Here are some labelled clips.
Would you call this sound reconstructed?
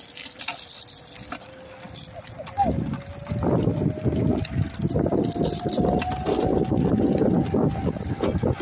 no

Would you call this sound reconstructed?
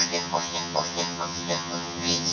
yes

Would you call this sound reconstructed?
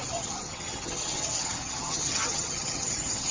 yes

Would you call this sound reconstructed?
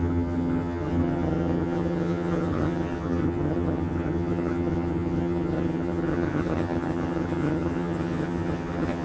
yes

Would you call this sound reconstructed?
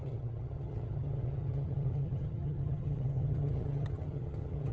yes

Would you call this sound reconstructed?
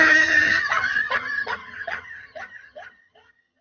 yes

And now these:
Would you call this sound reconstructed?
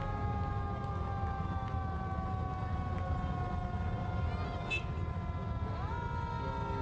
no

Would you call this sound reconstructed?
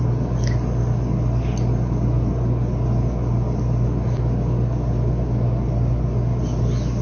no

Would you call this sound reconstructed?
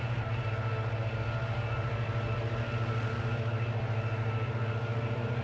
no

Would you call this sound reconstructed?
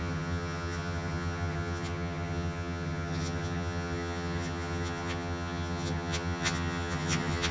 yes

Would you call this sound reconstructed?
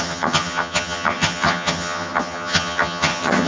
yes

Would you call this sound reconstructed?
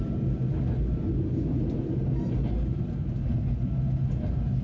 no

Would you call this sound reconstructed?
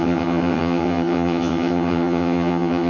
yes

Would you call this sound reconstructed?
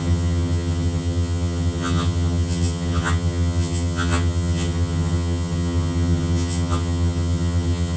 yes